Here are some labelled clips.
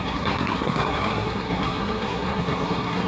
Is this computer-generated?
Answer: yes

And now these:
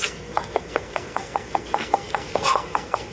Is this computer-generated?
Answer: yes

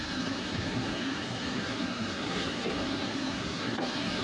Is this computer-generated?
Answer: yes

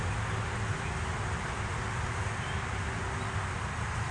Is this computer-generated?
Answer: no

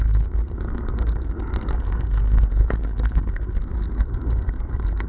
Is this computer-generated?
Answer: yes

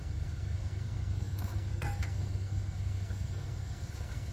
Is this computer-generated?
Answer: yes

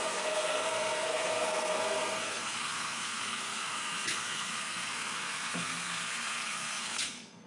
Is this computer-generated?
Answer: yes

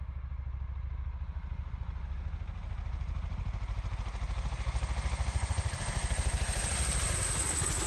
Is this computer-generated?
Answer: no